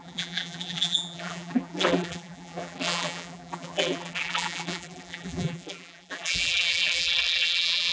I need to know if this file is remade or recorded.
remade